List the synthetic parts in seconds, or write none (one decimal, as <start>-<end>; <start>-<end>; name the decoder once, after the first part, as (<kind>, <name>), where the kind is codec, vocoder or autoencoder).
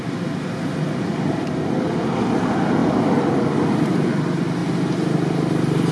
2.8-3.4 (vocoder, BigVGAN v2)